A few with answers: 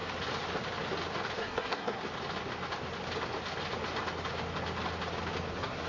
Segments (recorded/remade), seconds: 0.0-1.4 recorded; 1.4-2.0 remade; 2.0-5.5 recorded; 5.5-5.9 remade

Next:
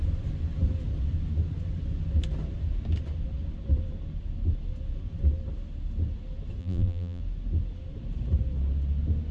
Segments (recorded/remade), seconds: 0.0-6.6 recorded; 6.6-7.2 remade; 7.2-9.3 recorded

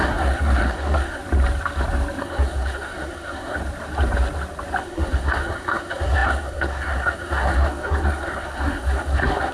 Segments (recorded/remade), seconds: 0.0-1.2 remade; 1.2-2.2 recorded; 2.2-3.6 remade; 3.6-4.8 recorded; 4.8-9.5 remade